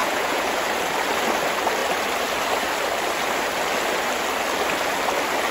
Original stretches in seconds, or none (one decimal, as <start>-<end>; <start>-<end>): 0.6-5.5